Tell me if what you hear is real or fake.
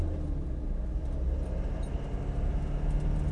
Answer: real